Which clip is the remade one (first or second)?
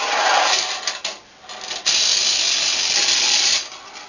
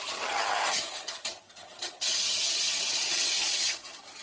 second